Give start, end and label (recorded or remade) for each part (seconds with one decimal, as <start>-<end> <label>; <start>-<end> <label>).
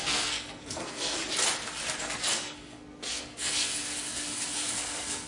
0.0-1.2 remade; 1.2-2.0 recorded; 2.0-5.3 remade